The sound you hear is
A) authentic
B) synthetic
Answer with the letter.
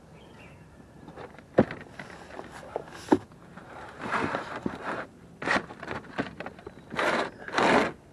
A